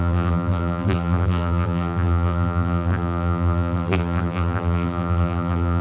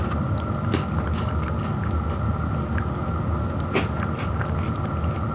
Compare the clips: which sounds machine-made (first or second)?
first